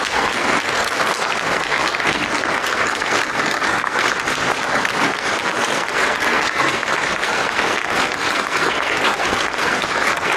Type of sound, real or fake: fake